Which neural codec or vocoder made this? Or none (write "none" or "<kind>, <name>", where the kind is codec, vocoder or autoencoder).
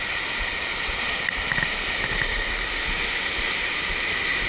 vocoder, BigVGAN v2